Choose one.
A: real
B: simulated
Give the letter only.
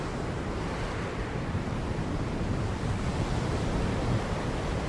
B